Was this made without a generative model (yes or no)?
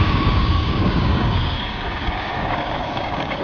no